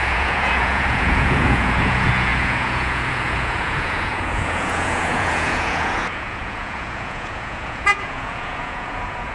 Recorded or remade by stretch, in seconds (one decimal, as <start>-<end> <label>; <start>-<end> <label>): 0.0-9.3 remade